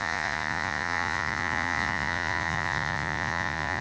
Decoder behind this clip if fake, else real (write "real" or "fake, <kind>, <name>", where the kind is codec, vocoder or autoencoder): fake, vocoder, Vocos